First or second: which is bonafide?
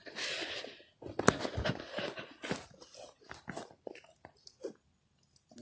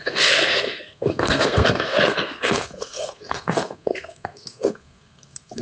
first